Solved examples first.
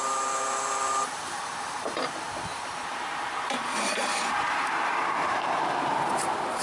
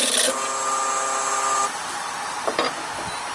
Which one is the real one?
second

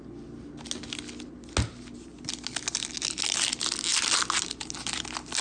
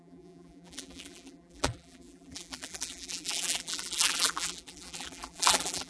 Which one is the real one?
first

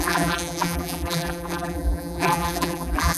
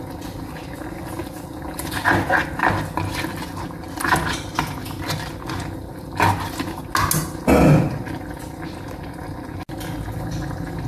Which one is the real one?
second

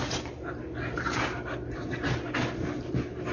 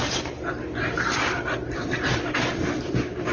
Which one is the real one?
first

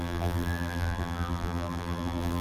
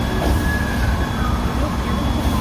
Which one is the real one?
second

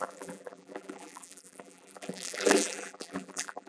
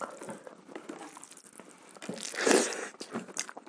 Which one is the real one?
second